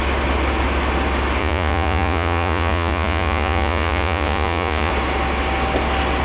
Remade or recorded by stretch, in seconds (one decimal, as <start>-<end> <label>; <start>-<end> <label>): 0.0-1.4 recorded; 1.4-4.9 remade; 4.9-6.2 recorded